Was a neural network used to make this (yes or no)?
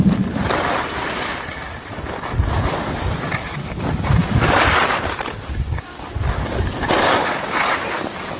no